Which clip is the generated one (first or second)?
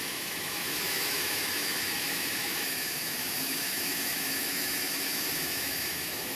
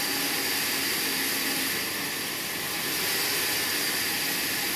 first